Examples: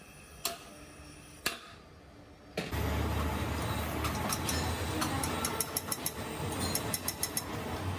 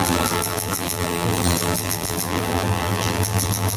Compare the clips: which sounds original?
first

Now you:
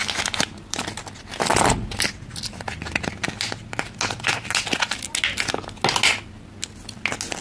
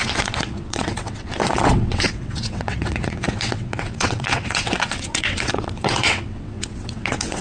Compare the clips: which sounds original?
first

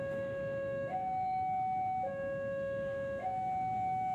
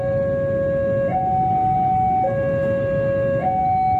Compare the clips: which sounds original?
second